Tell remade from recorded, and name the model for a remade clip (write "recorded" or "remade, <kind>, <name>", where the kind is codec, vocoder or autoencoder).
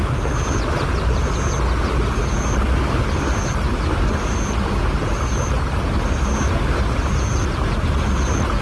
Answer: recorded